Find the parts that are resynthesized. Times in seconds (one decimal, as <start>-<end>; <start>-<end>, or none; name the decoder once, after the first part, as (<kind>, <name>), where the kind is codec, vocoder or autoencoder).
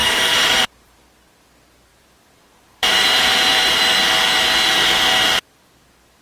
0.0-1.0 (vocoder, BigVGAN v2); 1.9-3.8